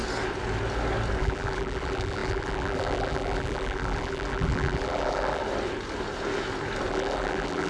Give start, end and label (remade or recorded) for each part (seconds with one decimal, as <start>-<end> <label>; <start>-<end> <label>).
0.0-1.2 recorded; 1.2-5.4 remade; 5.4-6.9 recorded; 6.9-7.7 remade